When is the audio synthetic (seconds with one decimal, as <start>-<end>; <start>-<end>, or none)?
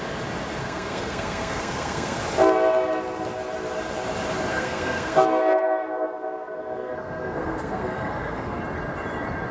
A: 0.6-2.2; 4.5-8.6